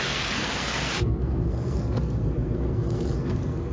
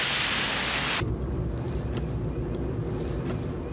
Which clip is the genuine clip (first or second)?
second